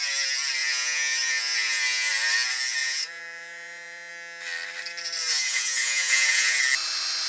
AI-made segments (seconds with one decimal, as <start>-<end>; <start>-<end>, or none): 0.6-2.1; 2.8-4.1; 5.2-6.6